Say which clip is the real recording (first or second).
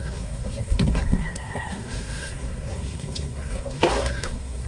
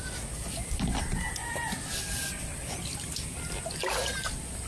second